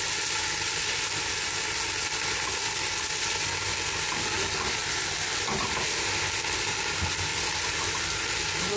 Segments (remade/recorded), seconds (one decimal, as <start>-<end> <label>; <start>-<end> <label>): 0.0-4.8 recorded; 4.8-5.8 remade; 5.8-8.8 recorded